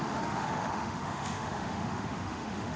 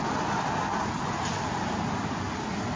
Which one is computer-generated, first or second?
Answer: first